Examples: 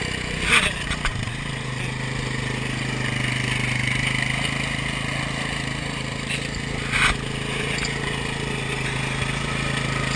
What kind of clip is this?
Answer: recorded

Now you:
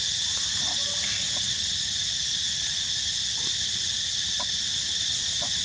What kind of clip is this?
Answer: recorded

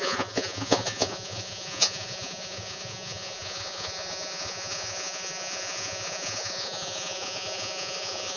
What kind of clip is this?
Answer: remade